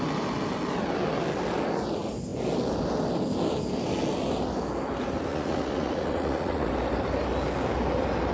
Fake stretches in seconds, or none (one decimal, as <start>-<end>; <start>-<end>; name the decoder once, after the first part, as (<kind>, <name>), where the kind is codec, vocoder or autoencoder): 5.3-6.7 (vocoder, Vocos)